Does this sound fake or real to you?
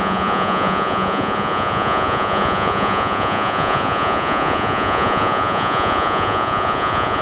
fake